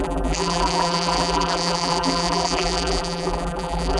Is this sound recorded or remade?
remade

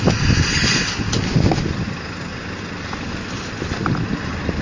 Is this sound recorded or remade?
recorded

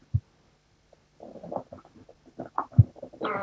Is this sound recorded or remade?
recorded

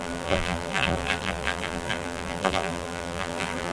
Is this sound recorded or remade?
remade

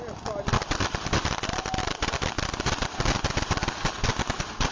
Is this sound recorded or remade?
recorded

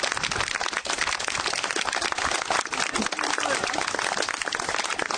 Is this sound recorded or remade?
recorded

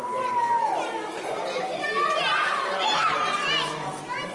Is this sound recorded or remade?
recorded